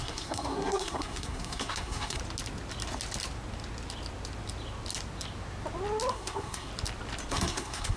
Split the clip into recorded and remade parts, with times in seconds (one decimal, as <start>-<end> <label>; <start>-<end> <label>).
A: 0.0-2.2 remade; 2.2-6.1 recorded; 6.1-6.7 remade; 6.7-7.3 recorded; 7.3-8.0 remade